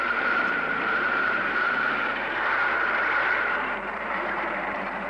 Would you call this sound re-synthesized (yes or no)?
yes